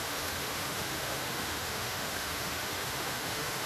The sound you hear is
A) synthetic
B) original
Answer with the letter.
A